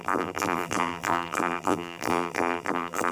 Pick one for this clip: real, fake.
fake